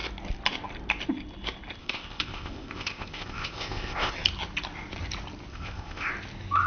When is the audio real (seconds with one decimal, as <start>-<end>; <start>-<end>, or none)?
0.0-1.8; 4.1-5.5; 6.1-6.7